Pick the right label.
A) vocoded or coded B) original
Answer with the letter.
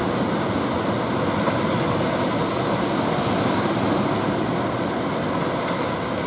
B